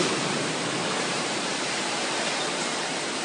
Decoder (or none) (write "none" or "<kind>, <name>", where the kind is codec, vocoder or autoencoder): vocoder, BigVGAN v2